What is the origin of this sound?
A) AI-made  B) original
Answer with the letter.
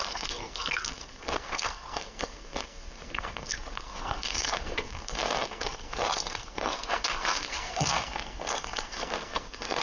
A